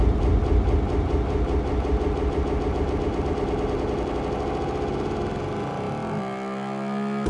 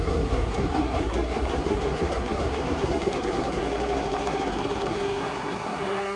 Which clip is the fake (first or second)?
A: second